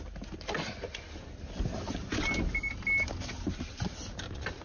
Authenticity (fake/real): real